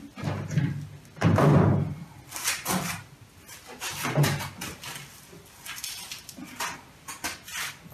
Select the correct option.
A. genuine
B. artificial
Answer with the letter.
A